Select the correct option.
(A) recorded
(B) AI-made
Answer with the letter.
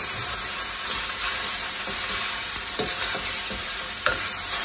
B